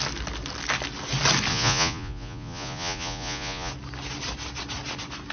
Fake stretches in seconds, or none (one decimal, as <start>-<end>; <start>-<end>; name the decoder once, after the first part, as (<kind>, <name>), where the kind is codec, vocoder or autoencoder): 1.5-3.7 (vocoder, Vocos)